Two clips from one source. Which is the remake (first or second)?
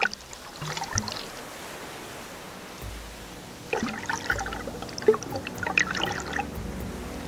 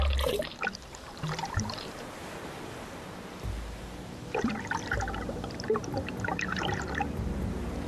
second